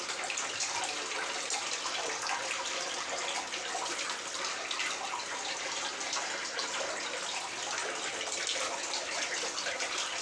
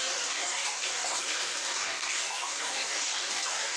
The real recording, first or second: first